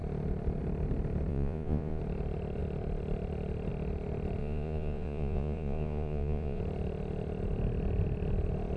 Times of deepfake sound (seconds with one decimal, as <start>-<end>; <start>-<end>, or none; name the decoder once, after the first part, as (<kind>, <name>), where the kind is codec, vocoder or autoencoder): 1.3-2.0 (vocoder, Vocos); 4.4-6.6